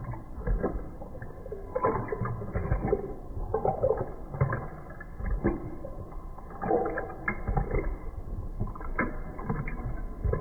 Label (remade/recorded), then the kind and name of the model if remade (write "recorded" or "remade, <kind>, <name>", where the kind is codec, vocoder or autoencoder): recorded